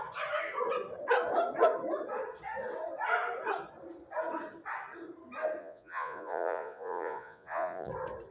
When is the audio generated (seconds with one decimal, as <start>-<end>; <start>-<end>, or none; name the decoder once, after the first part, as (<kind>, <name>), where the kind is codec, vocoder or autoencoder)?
5.6-7.9 (vocoder, Vocos)